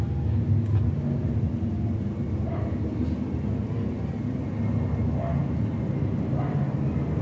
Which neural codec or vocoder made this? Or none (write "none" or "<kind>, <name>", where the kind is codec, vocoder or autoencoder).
none